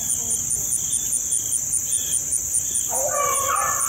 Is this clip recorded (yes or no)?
yes